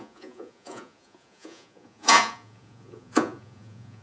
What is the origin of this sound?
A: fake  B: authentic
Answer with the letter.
A